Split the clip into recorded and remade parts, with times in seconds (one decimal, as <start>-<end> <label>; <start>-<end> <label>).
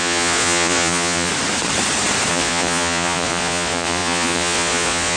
0.0-1.3 remade; 1.3-2.3 recorded; 2.3-5.2 remade